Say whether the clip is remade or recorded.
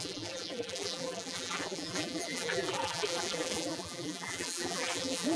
remade